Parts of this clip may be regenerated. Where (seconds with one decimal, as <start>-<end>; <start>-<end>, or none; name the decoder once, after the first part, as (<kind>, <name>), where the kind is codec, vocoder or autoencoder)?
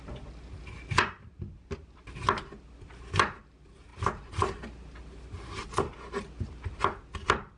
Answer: none